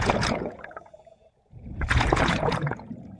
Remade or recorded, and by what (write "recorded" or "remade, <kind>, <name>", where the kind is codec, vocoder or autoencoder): remade, vocoder, Vocos